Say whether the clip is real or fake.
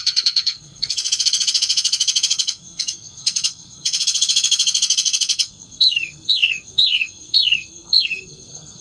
fake